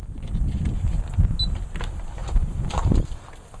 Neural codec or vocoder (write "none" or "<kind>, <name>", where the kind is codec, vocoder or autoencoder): none